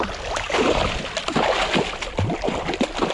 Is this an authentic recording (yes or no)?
yes